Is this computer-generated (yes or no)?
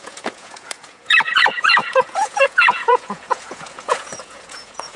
yes